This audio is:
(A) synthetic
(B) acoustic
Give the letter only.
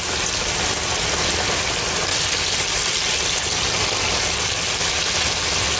B